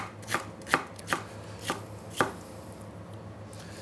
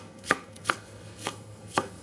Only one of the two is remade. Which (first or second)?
second